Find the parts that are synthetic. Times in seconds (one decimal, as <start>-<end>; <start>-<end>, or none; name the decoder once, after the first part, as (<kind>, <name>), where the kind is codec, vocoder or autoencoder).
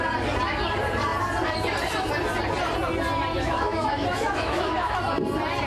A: 3.3-5.0 (autoencoder, DAC-VAE)